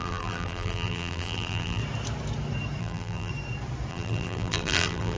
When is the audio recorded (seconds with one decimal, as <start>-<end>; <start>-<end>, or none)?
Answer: 1.8-2.8; 3.3-3.9

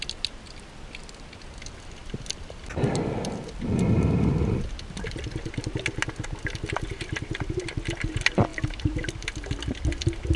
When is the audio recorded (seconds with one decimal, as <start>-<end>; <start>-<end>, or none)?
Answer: 0.0-8.5; 9.1-10.4

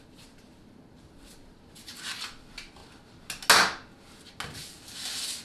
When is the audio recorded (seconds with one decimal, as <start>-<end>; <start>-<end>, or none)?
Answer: 0.0-5.4

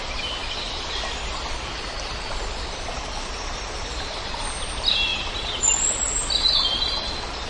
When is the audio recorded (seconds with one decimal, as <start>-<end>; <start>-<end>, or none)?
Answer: 0.0-7.5

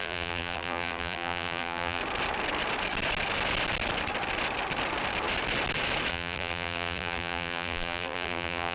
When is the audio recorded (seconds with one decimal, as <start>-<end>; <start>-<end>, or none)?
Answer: 2.0-6.1